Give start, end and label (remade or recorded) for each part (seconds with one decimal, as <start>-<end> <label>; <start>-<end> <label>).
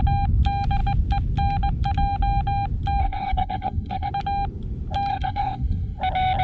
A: 0.0-3.0 recorded; 3.0-4.1 remade; 4.1-5.1 recorded; 5.1-6.0 remade; 6.0-6.4 recorded